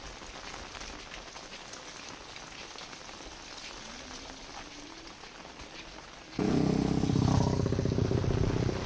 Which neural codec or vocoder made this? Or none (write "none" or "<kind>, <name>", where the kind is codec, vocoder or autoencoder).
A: none